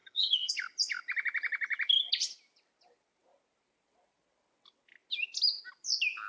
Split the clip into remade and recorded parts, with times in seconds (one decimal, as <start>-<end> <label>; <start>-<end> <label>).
0.0-0.5 remade; 0.5-6.3 recorded